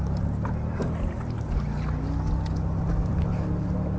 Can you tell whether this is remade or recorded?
recorded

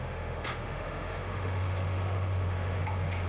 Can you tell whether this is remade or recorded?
remade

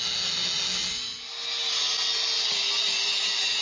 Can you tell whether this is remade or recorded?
recorded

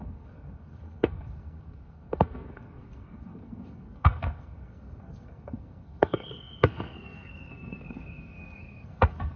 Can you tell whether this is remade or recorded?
remade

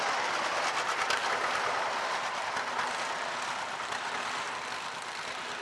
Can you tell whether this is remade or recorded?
recorded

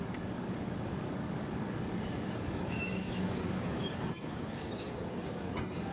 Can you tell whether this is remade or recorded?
remade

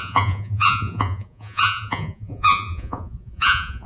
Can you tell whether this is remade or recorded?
remade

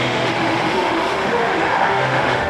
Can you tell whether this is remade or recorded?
remade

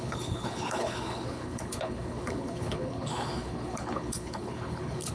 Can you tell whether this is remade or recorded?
remade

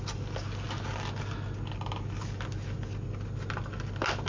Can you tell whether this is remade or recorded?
recorded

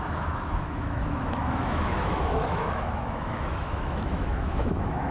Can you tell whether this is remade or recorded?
remade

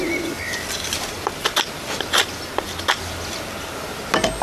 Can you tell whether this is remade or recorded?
recorded